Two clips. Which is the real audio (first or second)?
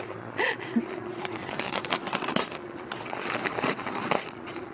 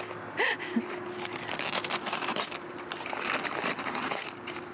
second